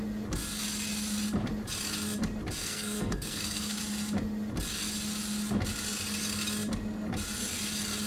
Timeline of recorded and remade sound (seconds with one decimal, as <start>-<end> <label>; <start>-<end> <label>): 0.0-2.6 recorded; 2.6-3.8 remade; 3.8-8.1 recorded